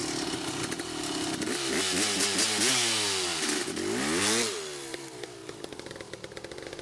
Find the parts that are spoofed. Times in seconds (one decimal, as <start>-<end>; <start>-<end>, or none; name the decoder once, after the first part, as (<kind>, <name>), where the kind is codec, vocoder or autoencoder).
none